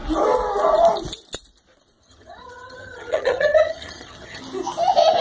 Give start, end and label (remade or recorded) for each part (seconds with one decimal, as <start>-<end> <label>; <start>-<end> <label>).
0.0-2.0 recorded; 2.0-4.4 remade; 4.4-5.2 recorded

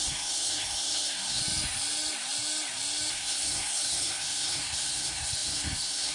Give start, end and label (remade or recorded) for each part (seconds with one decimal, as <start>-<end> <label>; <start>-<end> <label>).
0.0-1.4 remade; 1.4-3.1 recorded; 3.1-6.1 remade

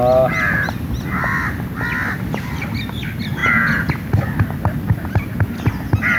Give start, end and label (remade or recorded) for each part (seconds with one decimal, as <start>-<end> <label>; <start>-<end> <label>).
0.0-3.4 recorded; 3.4-3.9 remade; 3.9-6.2 recorded

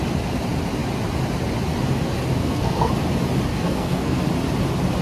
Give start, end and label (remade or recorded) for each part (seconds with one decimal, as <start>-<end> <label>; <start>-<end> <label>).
0.0-2.4 recorded; 2.4-2.9 remade; 2.9-3.5 recorded; 3.5-4.3 remade; 4.3-5.0 recorded

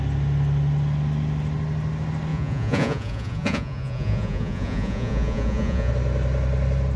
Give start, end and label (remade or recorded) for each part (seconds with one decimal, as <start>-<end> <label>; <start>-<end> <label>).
0.0-2.3 recorded; 2.3-5.9 remade; 5.9-7.0 recorded

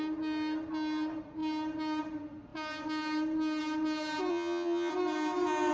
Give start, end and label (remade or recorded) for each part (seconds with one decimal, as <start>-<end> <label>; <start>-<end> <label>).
0.0-4.3 recorded; 4.3-4.9 remade; 4.9-5.7 recorded